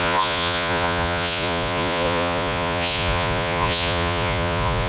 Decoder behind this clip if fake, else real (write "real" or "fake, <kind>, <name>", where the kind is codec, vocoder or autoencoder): fake, vocoder, Vocos